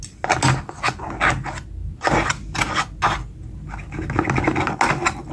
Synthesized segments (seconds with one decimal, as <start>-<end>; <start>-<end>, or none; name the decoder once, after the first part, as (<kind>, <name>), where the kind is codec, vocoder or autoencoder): none